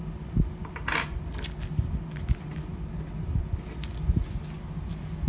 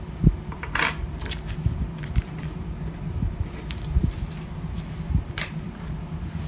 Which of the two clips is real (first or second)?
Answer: first